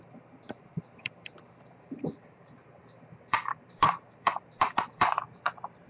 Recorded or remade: remade